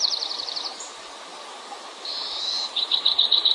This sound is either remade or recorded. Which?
remade